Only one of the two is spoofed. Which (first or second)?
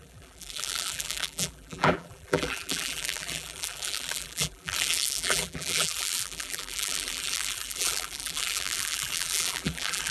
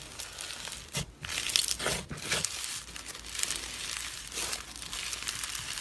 first